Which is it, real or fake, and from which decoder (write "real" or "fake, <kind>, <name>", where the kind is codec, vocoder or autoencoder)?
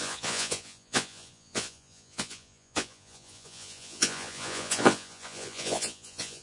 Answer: fake, vocoder, Vocos